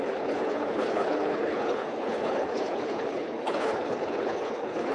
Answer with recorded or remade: remade